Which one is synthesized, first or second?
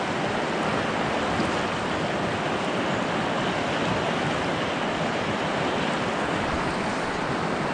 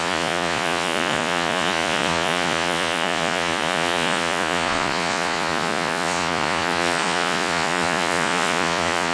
second